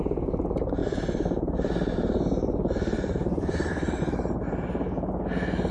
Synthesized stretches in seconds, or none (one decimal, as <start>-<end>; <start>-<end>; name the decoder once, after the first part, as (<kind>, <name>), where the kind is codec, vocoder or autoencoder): 0.8-4.0 (vocoder, BigVGAN v2)

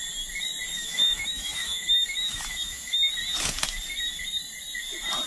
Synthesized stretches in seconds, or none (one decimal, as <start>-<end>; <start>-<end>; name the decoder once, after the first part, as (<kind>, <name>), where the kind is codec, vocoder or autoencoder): 0.7-3.1 (autoencoder, DAC-VAE)

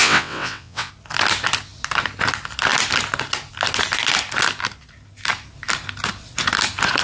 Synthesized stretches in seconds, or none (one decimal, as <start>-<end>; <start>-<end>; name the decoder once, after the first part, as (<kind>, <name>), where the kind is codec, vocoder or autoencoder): 0.0-0.9 (vocoder, WaveNeXt)

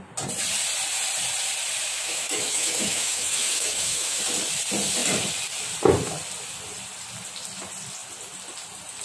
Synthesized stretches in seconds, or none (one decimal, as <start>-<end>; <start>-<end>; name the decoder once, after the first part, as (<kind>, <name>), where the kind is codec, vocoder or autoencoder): 1.9-4.2 (autoencoder, DAC-VAE)

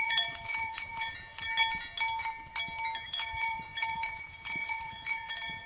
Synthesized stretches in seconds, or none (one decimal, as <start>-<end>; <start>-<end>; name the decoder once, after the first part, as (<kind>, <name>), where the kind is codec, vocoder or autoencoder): 0.0-1.3 (vocoder, Vocos); 3.1-5.7